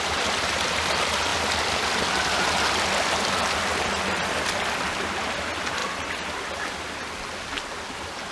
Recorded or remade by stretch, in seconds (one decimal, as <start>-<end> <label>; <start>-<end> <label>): 0.0-8.3 recorded